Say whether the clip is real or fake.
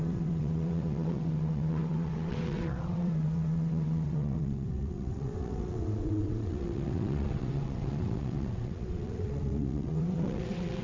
fake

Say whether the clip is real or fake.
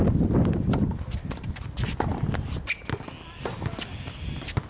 real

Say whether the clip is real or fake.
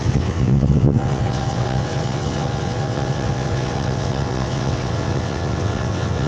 fake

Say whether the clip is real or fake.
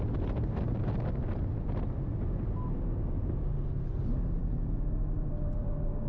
real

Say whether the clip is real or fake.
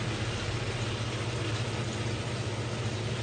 real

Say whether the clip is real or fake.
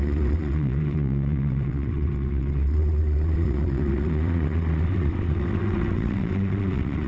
fake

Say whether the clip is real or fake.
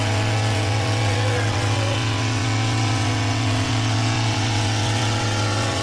fake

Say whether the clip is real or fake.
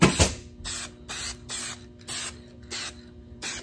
real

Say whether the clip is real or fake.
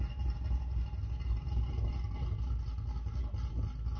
real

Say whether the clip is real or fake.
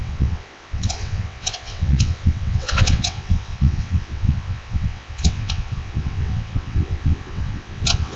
fake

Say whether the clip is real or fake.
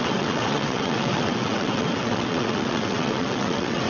fake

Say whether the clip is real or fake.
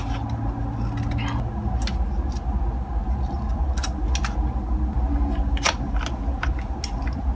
real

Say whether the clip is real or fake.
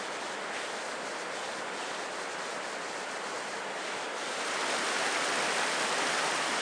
real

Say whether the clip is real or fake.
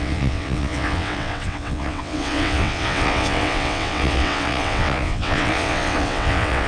fake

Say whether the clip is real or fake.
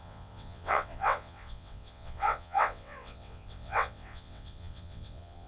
fake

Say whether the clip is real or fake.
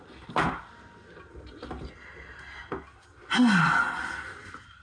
real